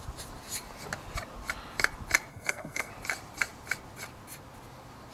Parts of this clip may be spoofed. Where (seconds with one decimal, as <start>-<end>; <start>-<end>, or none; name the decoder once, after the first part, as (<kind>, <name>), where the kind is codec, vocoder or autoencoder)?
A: 2.3-2.9 (codec, SNAC)

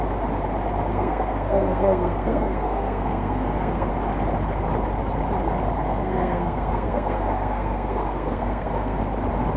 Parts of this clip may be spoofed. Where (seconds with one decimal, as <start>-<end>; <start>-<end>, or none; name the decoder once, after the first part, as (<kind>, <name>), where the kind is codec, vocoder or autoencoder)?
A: 0.9-3.9 (codec, SNAC); 5.8-9.0